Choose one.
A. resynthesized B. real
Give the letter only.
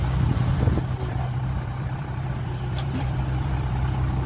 A